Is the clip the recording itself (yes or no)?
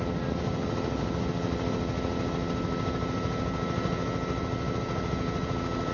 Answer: yes